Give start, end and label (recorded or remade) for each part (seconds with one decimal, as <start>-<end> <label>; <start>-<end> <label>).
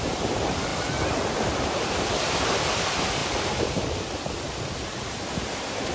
0.0-5.9 recorded